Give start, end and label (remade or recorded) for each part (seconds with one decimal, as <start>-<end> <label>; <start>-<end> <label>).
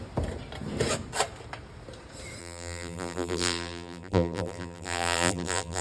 0.0-2.4 recorded; 2.4-5.8 remade